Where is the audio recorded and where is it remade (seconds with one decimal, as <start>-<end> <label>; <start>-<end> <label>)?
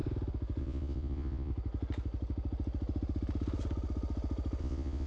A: 0.0-0.6 recorded; 0.6-1.5 remade; 1.5-4.6 recorded; 4.6-5.1 remade